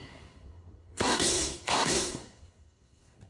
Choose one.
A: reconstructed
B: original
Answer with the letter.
A